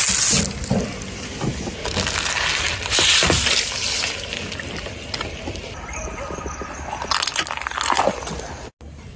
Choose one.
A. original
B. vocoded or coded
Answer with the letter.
A